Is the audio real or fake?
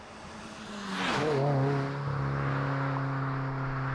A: real